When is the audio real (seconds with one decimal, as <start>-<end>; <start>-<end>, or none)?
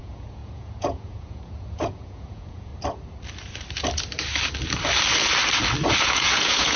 2.7-6.0